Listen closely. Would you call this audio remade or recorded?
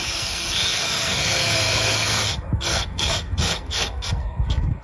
remade